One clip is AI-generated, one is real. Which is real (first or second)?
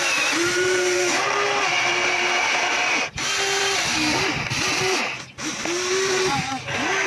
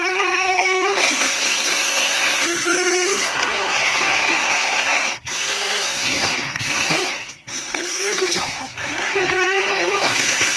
first